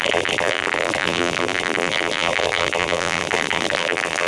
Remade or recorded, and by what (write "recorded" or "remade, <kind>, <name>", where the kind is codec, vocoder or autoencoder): remade, vocoder, BigVGAN v2